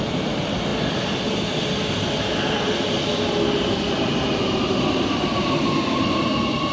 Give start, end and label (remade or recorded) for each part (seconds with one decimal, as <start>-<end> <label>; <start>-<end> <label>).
0.0-6.7 recorded